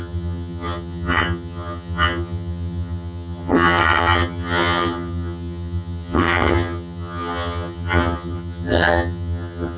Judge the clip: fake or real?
fake